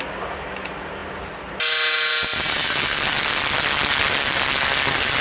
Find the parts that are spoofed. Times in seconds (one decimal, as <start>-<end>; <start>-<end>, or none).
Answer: none